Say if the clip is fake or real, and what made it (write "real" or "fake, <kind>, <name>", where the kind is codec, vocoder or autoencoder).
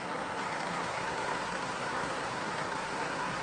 fake, codec, SNAC